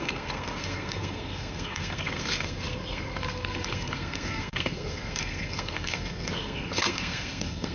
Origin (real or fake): fake